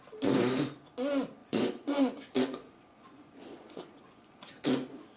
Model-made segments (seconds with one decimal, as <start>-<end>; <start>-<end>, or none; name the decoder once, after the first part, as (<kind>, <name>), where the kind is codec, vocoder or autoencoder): 1.4-4.5 (vocoder, Vocos)